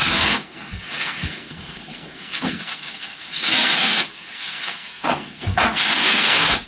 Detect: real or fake fake